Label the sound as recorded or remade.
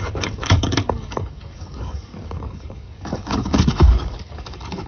remade